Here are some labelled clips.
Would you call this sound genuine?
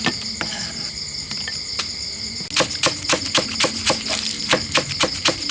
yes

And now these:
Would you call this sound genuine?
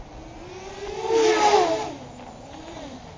yes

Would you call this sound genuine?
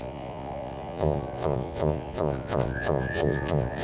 no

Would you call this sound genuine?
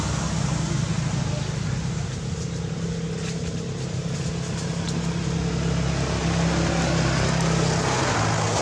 yes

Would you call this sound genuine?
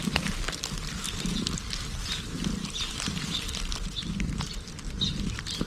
no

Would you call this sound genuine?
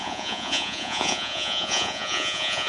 no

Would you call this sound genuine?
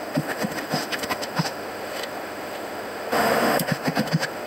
no